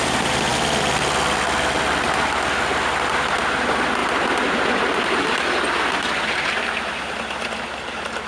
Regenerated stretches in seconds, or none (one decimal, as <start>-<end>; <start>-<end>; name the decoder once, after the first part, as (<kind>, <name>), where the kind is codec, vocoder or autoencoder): none